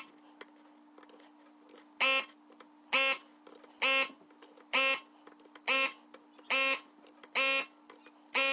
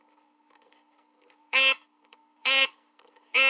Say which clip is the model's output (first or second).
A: second